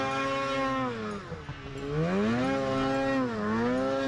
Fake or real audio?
real